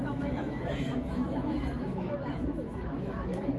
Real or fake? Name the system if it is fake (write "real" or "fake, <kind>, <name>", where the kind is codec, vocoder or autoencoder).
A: fake, autoencoder, DAC-VAE